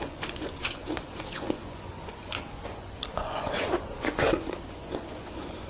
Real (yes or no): no